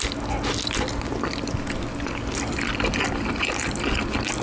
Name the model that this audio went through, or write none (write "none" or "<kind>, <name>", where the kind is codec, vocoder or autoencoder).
none